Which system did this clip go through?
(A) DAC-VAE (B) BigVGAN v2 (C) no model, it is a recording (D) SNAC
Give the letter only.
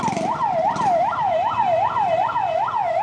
B